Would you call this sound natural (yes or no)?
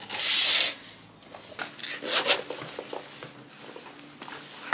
yes